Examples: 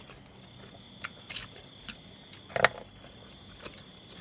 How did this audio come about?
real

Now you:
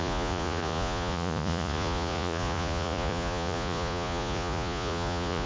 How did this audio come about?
fake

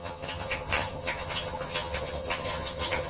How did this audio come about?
fake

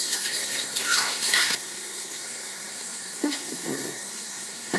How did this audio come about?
fake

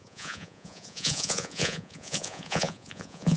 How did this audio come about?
fake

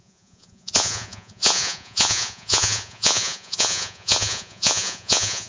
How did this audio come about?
fake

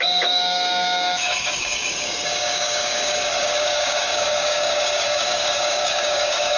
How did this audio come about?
fake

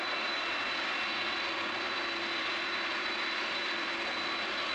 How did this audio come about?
real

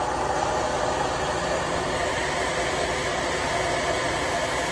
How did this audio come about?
real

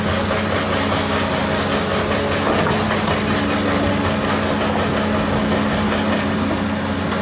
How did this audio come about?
real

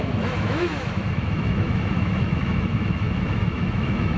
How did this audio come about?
fake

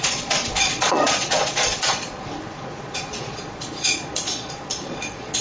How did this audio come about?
fake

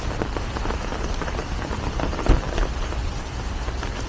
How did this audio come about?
real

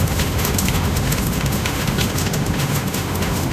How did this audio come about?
fake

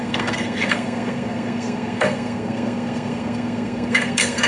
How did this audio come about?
fake